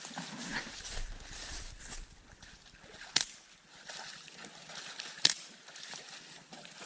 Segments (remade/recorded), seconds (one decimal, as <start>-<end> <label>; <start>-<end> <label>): 0.0-0.5 recorded; 0.5-1.8 remade; 1.8-6.9 recorded

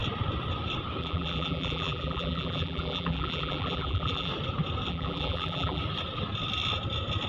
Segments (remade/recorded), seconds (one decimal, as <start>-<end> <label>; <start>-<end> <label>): 0.0-1.0 recorded; 1.0-4.3 remade; 4.3-4.9 recorded; 4.9-5.8 remade; 5.8-7.3 recorded

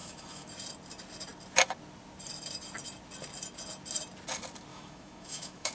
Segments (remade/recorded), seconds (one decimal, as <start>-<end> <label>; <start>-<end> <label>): 0.0-0.5 remade; 0.5-4.7 recorded; 4.7-5.7 remade

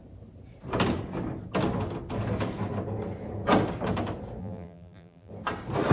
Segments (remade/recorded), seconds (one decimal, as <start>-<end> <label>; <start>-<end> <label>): 0.0-4.4 recorded; 4.4-5.3 remade; 5.3-5.9 recorded

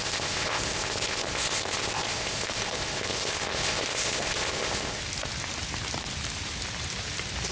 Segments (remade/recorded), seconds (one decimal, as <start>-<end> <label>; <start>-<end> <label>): 0.0-5.0 remade; 5.0-7.5 recorded

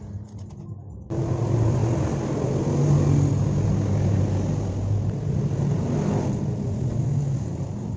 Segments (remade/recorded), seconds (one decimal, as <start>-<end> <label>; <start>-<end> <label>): 0.0-8.0 recorded

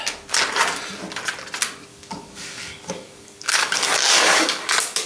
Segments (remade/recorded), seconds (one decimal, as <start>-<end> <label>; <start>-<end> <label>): 0.0-1.9 recorded; 1.9-5.1 remade